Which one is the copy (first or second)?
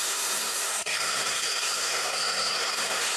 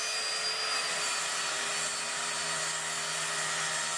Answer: first